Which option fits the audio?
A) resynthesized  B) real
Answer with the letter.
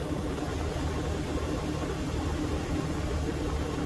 B